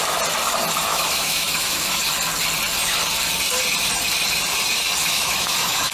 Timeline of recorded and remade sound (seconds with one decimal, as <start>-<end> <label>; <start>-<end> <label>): 0.0-0.9 recorded; 0.9-2.0 remade; 2.0-5.0 recorded; 5.0-5.9 remade